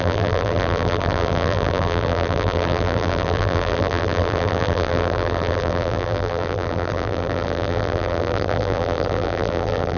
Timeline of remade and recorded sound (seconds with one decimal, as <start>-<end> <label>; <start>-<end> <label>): 0.0-10.0 remade